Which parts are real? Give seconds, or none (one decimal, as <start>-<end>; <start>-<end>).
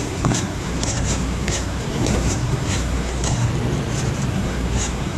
3.5-4.3